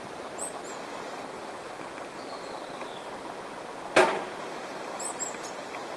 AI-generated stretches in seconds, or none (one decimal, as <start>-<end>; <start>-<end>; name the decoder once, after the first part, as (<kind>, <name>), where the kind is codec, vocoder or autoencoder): none